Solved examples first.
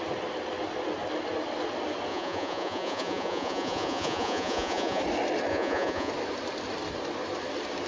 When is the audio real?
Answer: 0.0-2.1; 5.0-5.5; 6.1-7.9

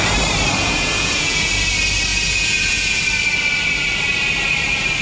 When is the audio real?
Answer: 0.0-0.6; 1.5-2.1; 3.0-5.0

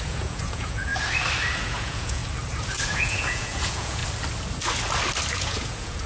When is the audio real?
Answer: 0.9-1.6; 2.2-2.9; 4.0-5.3

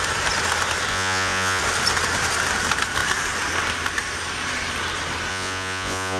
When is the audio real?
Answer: 0.0-0.9; 1.6-5.3

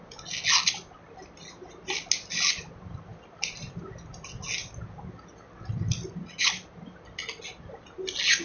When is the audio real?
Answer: 0.0-8.4

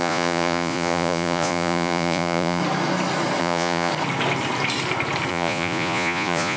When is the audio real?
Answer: 2.6-3.4; 3.9-5.3

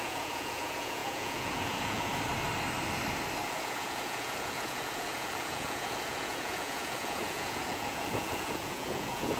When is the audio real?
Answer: 2.1-3.5

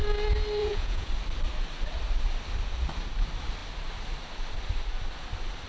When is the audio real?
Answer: 0.0-0.6; 1.1-5.7